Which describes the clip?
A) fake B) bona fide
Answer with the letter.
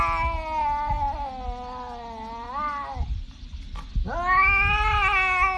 B